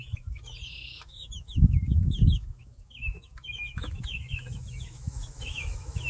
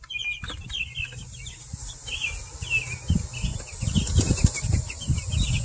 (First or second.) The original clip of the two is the second